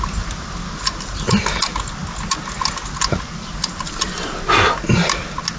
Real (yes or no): yes